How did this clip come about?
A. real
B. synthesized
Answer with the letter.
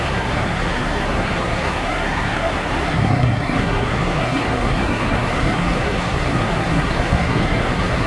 B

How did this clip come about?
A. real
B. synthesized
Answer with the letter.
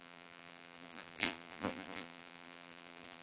B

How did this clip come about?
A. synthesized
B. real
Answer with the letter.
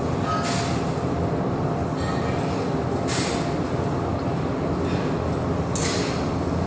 B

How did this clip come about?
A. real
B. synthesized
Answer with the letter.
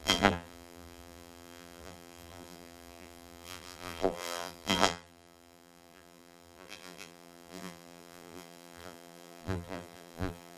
B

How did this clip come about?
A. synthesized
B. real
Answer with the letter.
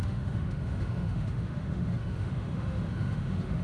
A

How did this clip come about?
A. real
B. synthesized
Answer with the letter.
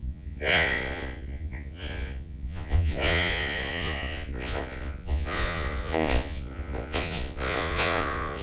B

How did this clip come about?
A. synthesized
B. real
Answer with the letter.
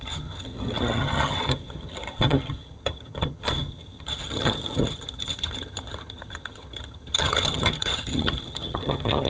A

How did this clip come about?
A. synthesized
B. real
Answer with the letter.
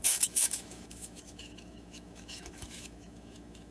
A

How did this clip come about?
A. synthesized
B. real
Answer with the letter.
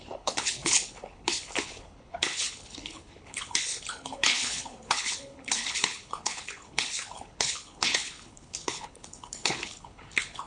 A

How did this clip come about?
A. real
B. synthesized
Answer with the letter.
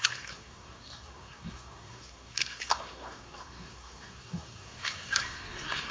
B